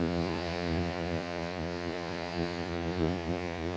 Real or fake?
fake